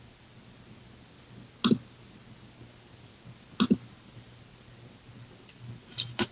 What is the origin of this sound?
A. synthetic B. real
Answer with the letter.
B